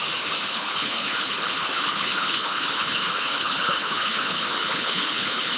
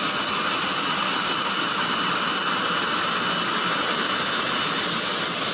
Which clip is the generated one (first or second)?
first